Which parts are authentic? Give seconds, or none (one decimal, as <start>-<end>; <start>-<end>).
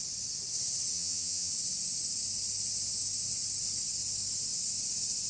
0.0-0.9; 1.5-5.3